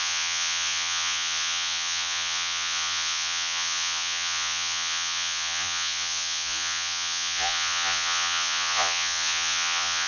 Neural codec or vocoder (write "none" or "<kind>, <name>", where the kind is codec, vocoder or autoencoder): vocoder, Vocos